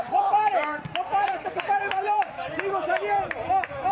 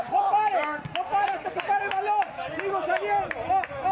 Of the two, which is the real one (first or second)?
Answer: second